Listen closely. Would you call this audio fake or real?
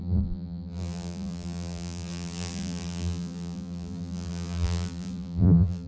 fake